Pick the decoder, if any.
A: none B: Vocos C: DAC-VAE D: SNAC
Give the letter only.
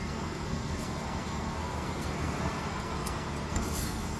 D